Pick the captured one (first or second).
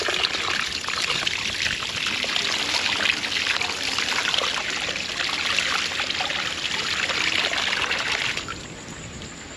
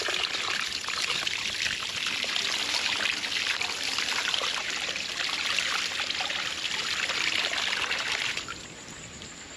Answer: first